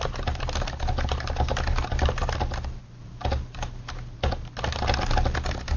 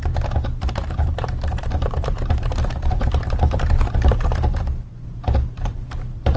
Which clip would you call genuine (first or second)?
first